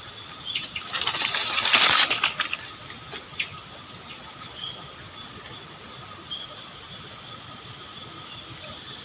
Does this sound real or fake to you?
real